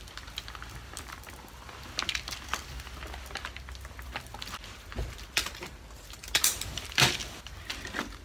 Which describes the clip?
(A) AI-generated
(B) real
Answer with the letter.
B